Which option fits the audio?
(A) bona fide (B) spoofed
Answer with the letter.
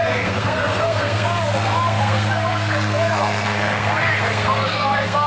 B